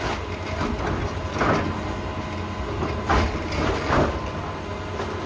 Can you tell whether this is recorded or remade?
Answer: recorded